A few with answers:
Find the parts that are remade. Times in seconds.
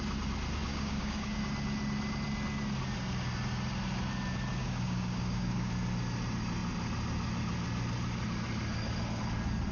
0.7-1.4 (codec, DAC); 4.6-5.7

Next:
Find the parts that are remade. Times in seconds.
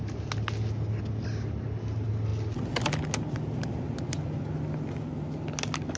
none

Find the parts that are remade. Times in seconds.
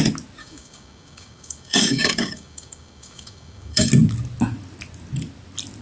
0.4-3.9 (codec, DAC)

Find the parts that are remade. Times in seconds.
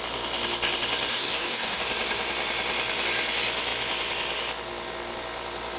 1.1-1.8 (codec, DAC)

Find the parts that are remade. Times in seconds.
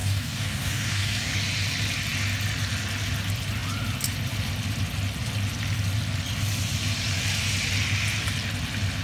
0.0-1.4 (codec, DAC)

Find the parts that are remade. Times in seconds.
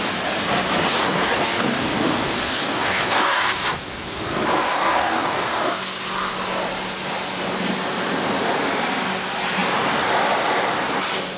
0.9-3.9 (codec, DAC); 4.7-5.8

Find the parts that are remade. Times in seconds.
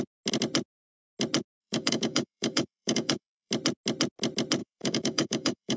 1.6-3.5 (codec, DAC); 4.6-5.8